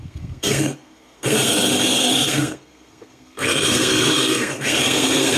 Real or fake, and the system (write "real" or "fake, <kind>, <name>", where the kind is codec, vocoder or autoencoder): fake, codec, SNAC